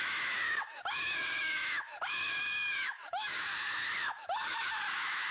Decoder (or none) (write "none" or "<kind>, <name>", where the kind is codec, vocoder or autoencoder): autoencoder, DAC-VAE